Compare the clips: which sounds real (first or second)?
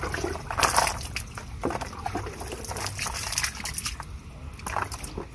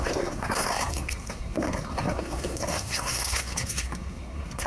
first